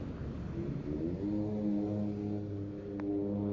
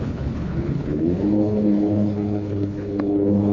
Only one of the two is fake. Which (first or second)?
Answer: second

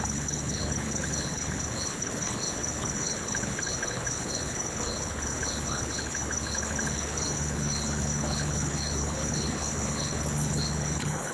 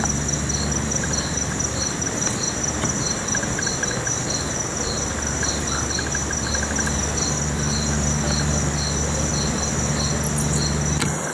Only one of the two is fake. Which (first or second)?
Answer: first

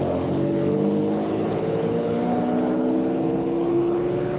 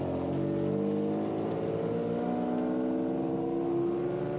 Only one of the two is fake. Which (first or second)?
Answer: first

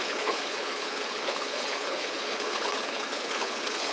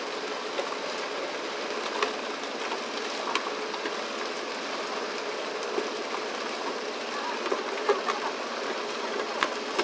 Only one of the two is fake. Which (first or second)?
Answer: first